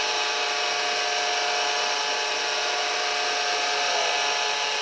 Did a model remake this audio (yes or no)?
no